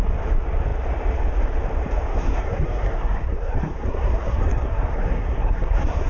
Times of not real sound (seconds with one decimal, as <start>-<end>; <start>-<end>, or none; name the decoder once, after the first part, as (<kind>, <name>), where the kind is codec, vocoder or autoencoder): 2.1-6.1 (codec, SNAC)